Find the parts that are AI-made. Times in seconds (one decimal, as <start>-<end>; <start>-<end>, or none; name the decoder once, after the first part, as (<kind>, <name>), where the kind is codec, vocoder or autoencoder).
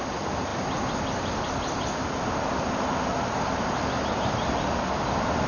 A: none